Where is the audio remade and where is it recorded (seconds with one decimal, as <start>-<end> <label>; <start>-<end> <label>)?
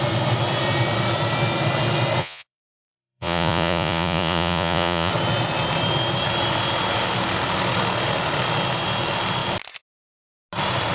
0.0-2.2 recorded; 2.2-5.1 remade; 5.1-10.9 recorded